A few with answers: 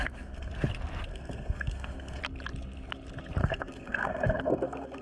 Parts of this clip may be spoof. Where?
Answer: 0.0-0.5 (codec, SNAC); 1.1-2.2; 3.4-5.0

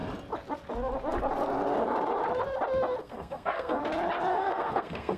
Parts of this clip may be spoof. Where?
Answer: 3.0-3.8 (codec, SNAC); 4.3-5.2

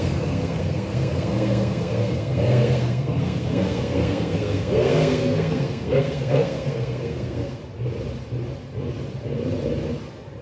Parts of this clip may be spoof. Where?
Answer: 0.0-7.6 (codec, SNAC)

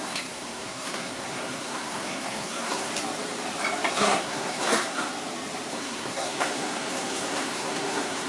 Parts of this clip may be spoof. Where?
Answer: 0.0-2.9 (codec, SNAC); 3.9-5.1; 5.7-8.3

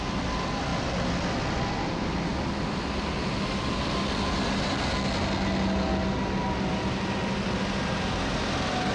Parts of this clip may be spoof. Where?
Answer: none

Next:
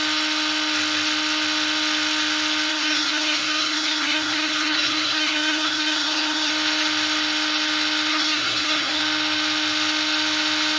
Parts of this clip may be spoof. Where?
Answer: 2.7-6.5 (codec, SNAC); 8.1-9.0

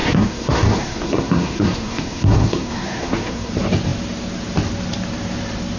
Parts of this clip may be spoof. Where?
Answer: 0.0-3.5 (codec, SNAC)